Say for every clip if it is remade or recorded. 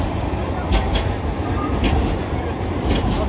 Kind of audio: recorded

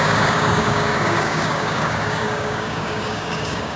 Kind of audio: remade